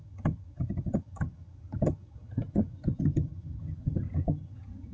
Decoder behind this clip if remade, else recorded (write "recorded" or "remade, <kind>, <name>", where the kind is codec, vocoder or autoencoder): remade, vocoder, HiFi-GAN